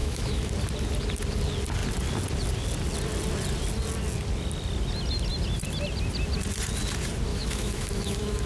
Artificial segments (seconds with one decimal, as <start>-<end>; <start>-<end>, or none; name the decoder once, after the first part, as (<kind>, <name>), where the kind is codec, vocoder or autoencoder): 0.0-0.5 (autoencoder, DAC-VAE); 7.3-8.5